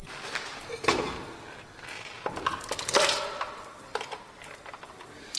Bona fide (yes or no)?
no